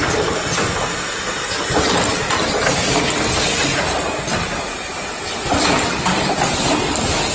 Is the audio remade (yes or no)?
no